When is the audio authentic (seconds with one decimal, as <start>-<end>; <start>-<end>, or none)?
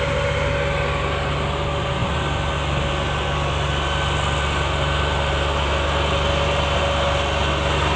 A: 0.0-8.0